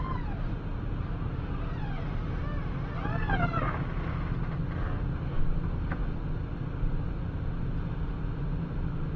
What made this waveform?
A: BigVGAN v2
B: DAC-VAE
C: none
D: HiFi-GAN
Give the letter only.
C